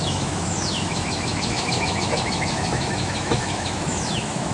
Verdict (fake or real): fake